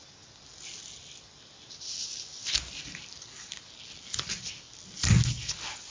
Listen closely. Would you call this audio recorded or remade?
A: recorded